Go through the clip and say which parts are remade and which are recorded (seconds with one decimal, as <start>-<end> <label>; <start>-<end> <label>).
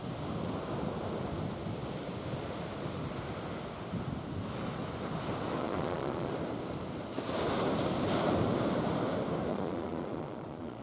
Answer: 0.0-5.6 recorded; 5.6-6.3 remade; 6.3-9.5 recorded; 9.5-10.8 remade